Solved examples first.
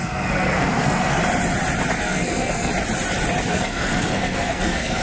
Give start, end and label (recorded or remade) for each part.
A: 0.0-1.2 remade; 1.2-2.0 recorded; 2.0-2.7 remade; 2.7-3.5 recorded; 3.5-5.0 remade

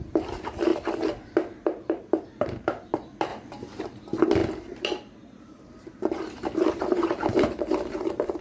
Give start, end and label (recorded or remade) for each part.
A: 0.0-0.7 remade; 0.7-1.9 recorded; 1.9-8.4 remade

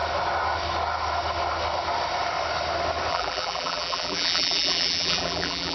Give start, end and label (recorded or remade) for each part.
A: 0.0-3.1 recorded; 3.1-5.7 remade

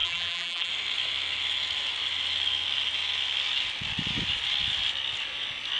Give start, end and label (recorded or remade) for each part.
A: 0.0-0.7 remade; 0.7-5.8 recorded

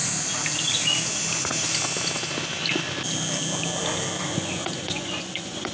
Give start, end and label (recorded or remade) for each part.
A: 0.0-4.2 recorded; 4.2-5.7 remade